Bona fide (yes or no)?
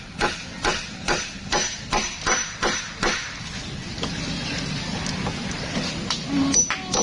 yes